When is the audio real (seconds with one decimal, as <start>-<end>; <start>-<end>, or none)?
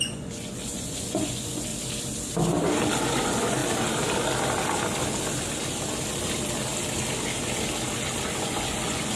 1.7-3.0; 3.6-8.4